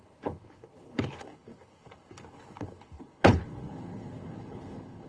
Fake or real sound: fake